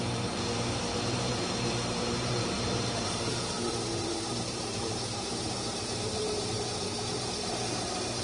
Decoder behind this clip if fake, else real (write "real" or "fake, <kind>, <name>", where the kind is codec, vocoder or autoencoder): fake, vocoder, BigVGAN v2